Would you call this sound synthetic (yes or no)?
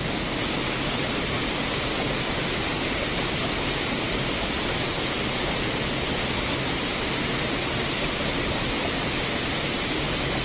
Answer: no